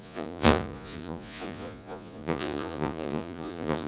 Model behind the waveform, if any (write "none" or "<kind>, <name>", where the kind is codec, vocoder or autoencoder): vocoder, Vocos